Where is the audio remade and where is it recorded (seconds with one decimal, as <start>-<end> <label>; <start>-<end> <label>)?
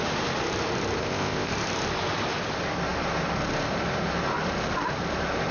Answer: 0.0-1.0 recorded; 1.0-1.5 remade; 1.5-5.5 recorded